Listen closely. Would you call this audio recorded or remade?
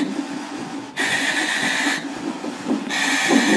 remade